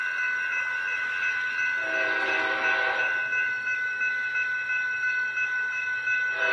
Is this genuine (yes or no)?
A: yes